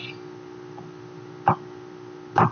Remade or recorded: recorded